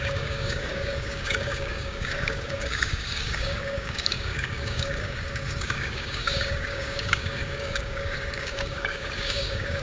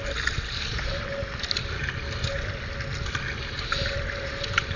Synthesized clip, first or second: first